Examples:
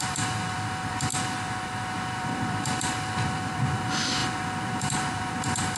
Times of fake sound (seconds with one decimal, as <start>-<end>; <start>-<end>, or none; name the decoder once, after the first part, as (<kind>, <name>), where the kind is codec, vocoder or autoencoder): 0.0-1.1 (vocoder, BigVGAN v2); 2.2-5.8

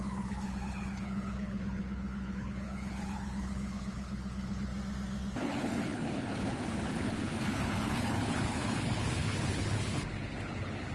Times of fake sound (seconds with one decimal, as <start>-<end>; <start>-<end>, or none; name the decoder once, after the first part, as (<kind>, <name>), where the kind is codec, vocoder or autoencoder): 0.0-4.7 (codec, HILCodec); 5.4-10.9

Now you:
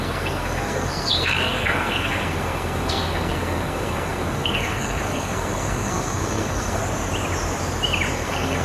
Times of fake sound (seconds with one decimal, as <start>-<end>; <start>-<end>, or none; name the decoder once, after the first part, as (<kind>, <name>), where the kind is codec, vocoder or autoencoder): 0.0-6.8 (codec, SNAC); 8.1-8.6